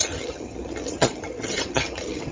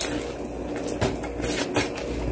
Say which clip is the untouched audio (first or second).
second